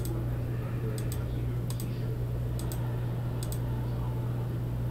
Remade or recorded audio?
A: recorded